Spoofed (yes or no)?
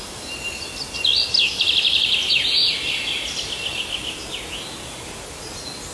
no